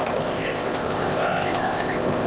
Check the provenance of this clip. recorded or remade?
remade